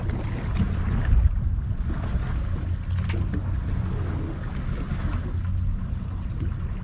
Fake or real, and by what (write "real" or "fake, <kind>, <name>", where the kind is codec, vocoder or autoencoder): real